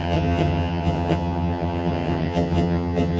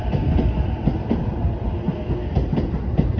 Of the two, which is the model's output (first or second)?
first